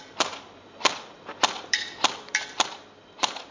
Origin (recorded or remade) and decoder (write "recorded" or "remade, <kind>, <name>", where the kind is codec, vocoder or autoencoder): remade, vocoder, BigVGAN v2